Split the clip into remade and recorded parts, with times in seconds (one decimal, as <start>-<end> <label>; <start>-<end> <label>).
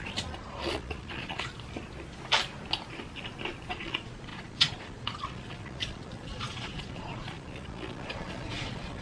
0.0-1.5 remade; 1.5-3.7 recorded; 3.7-9.0 remade